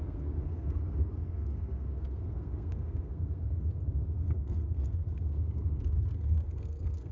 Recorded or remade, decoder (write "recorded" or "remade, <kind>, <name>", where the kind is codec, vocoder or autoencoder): remade, codec, SNAC